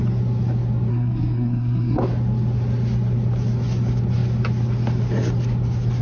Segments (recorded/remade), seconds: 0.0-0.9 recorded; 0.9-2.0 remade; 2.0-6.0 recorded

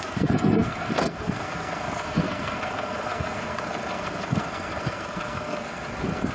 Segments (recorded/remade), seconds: 0.0-6.3 remade

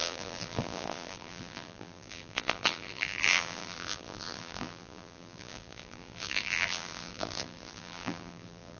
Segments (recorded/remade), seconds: 0.0-8.8 remade

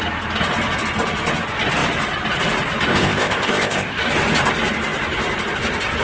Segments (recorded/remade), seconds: 0.0-2.9 recorded; 2.9-4.0 remade; 4.0-6.0 recorded

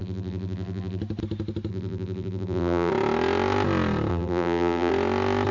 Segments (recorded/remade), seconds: 0.0-1.0 remade; 1.0-1.7 recorded; 1.7-2.9 remade; 2.9-4.1 recorded; 4.1-4.9 remade; 4.9-5.5 recorded